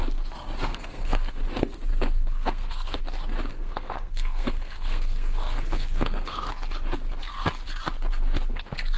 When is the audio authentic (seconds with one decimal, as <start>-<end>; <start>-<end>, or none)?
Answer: 0.0-0.7; 1.4-1.9; 3.0-3.5; 6.5-9.0